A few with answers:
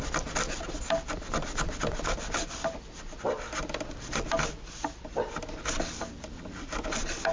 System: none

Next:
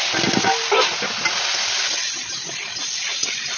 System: none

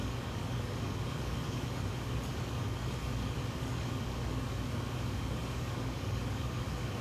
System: codec, DAC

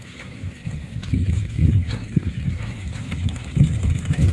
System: codec, SNAC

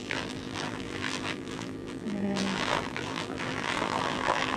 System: vocoder, BigVGAN v2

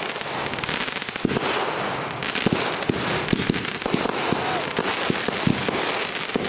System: none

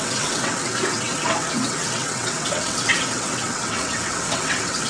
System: vocoder, WaveNeXt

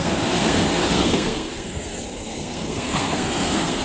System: codec, SNAC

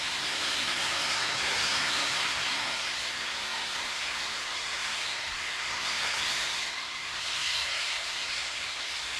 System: codec, SNAC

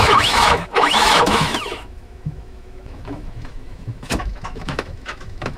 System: autoencoder, DAC-VAE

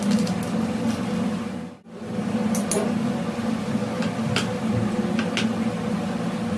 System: none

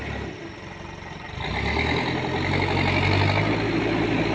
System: none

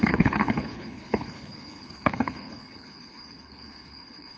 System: codec, HILCodec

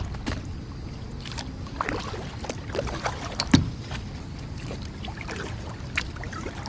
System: none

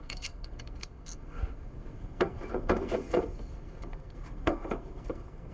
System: codec, SNAC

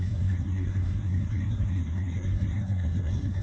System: codec, SNAC